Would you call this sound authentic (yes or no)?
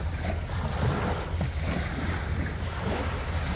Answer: yes